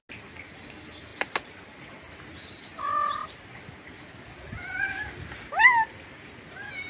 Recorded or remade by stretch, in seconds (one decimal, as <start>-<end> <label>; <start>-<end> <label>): 0.0-6.9 recorded